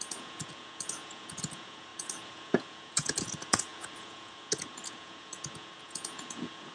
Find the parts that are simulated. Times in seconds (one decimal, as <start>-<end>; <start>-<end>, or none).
0.0-6.7

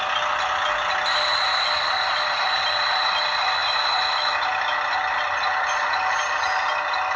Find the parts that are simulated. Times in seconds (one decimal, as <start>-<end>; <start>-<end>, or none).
none

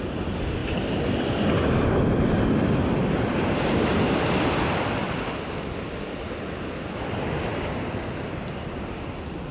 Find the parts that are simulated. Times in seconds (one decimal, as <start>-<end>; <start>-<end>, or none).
none

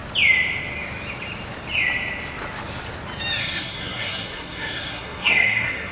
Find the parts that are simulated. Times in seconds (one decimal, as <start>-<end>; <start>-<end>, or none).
3.4-5.9

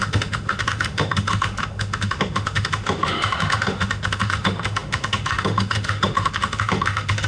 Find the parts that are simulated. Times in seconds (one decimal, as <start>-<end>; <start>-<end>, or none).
0.0-7.3

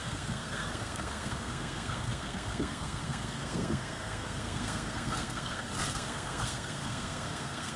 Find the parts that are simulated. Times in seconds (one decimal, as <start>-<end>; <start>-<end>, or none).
0.0-7.8

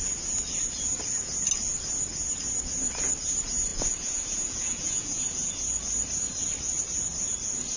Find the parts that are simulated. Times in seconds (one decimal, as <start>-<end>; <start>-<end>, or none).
3.7-5.5